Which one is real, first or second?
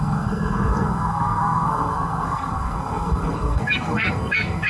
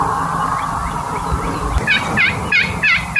second